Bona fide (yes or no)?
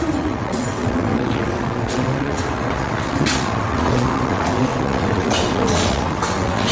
no